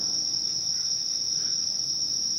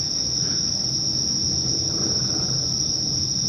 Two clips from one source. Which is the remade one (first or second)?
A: first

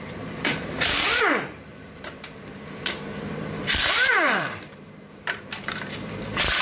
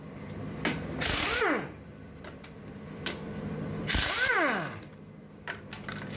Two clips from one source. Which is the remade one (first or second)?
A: first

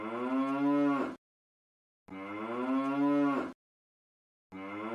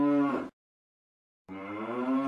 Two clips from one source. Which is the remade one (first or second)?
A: second